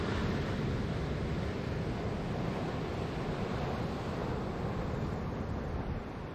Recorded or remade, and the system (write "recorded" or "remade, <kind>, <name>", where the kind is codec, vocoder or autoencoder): recorded